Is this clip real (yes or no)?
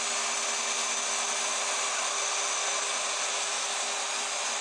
yes